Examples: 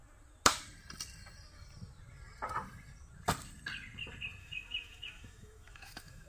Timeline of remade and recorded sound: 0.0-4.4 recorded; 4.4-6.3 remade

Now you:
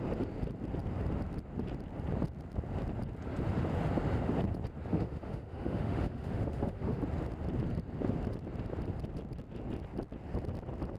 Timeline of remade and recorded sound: 0.0-4.9 recorded; 4.9-7.0 remade; 7.0-11.0 recorded

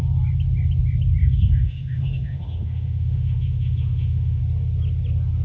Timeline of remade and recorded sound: 0.0-1.2 recorded; 1.2-4.4 remade; 4.4-5.4 recorded

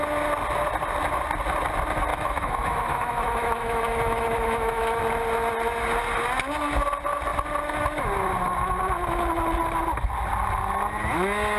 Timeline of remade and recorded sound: 0.0-2.1 recorded; 2.1-5.0 remade; 5.0-11.6 recorded

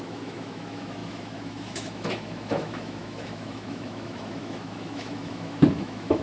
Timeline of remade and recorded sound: 0.0-6.2 remade

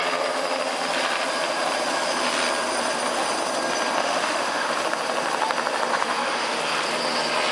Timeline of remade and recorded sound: 0.0-4.0 recorded; 4.0-4.7 remade; 4.7-5.9 recorded; 5.9-6.6 remade; 6.6-7.5 recorded

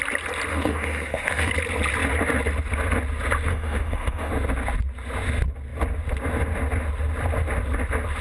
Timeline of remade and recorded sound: 0.0-0.5 recorded; 0.5-1.5 remade; 1.5-3.5 recorded; 3.5-4.3 remade; 4.3-8.2 recorded

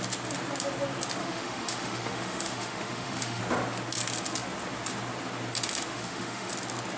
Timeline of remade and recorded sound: 0.0-1.2 recorded; 1.2-3.4 remade; 3.4-5.9 recorded; 5.9-6.5 remade; 6.5-7.0 recorded